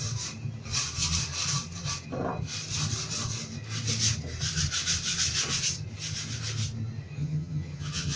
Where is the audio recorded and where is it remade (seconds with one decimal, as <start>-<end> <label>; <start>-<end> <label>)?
0.0-7.2 recorded; 7.2-8.2 remade